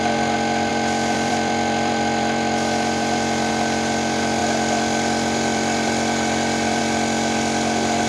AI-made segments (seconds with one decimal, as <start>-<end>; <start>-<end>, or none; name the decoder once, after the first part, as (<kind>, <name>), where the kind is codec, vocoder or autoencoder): 0.7-3.5 (vocoder, BigVGAN v2); 4.4-6.8